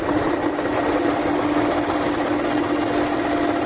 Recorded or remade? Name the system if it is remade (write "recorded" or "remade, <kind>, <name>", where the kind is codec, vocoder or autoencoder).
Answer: recorded